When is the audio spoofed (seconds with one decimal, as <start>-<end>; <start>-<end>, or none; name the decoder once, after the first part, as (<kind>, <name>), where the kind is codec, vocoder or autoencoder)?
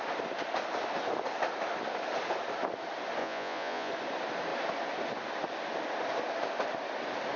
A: 3.2-3.9 (vocoder, Vocos)